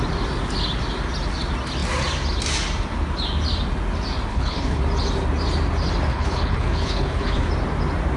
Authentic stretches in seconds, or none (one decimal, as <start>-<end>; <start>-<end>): 0.0-4.3; 4.8-6.1; 7.5-8.2

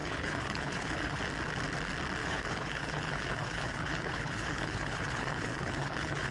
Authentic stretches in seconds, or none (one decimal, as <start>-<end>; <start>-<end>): 1.2-2.2

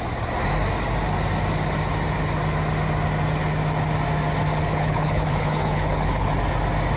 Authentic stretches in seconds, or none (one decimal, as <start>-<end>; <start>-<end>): 0.0-4.6; 6.3-7.0